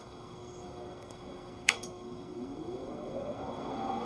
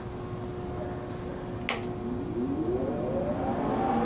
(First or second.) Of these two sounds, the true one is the second